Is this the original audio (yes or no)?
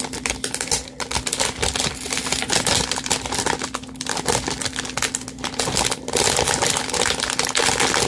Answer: yes